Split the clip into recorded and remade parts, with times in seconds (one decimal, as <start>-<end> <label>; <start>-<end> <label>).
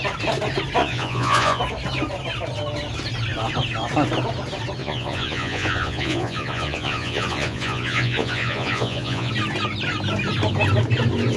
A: 0.0-0.8 recorded; 0.8-1.6 remade; 1.6-4.8 recorded; 4.8-9.3 remade; 9.3-11.4 recorded